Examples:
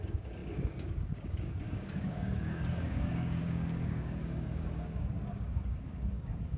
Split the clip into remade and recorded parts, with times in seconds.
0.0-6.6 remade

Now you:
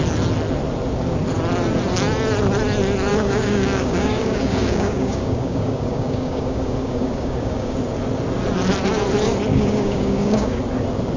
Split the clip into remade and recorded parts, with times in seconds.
0.0-3.1 recorded; 3.1-7.8 remade; 7.8-9.5 recorded; 9.5-10.6 remade; 10.6-11.2 recorded